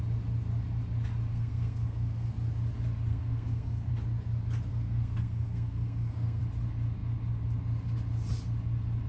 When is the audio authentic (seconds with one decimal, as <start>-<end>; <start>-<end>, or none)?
0.0-1.3; 2.3-3.1; 3.9-4.7; 6.4-9.1